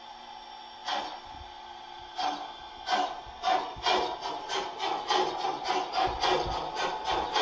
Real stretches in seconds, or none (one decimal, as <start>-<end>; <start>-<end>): 0.0-7.4